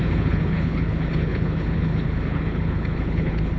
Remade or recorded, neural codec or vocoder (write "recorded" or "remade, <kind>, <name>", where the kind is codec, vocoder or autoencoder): remade, codec, HILCodec